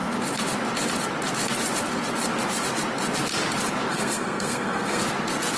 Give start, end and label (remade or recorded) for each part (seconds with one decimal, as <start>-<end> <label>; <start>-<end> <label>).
0.0-3.9 recorded; 3.9-5.0 remade; 5.0-5.6 recorded